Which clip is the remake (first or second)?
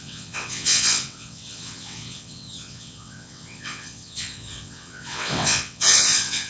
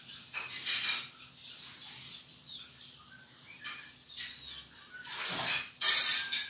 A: first